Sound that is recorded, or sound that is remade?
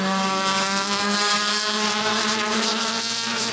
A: remade